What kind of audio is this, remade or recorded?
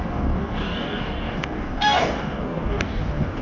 remade